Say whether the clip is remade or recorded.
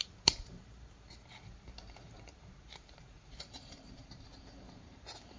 remade